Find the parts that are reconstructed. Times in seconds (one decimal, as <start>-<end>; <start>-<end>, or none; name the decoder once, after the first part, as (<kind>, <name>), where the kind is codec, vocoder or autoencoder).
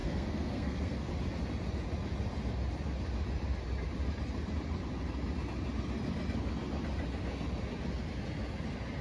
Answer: 0.0-1.1 (codec, SNAC)